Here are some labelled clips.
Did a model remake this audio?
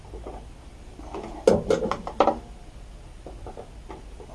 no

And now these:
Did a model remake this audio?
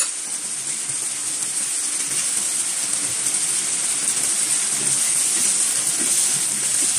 no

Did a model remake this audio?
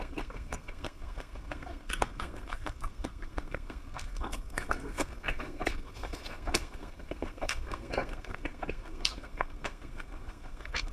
yes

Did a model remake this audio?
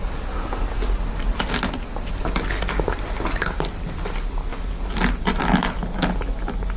no